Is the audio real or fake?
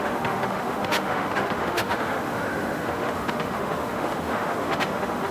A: fake